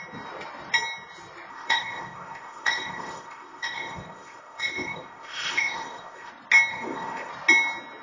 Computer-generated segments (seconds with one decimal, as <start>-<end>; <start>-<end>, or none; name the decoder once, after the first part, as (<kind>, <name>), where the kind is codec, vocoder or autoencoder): 1.5-6.3 (codec, ZipCodec); 6.7-7.3